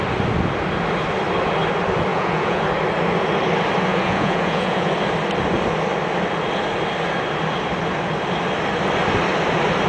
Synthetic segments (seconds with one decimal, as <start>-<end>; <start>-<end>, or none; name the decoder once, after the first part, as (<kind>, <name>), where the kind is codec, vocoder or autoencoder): 2.1-2.6 (vocoder, Vocos); 3.9-4.9